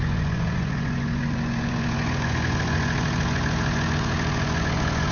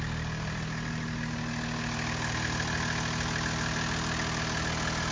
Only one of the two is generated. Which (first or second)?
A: first